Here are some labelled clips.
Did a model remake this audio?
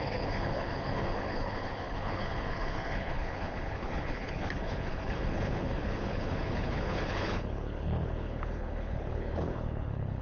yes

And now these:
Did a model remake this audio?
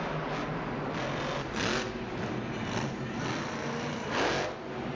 no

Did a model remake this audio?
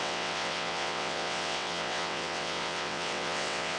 yes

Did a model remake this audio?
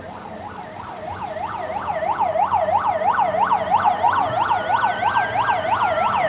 no